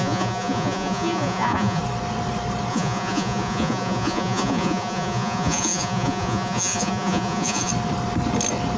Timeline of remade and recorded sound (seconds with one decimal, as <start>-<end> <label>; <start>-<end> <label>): 0.0-1.8 remade; 1.8-2.7 recorded; 2.7-7.7 remade; 7.7-8.8 recorded